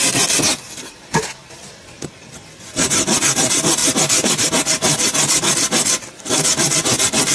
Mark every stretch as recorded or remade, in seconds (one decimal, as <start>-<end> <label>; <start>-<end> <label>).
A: 0.0-7.3 recorded